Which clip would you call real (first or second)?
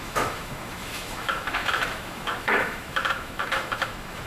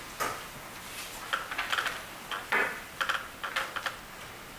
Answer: second